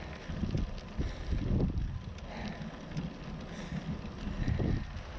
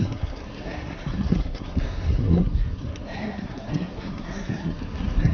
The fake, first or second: second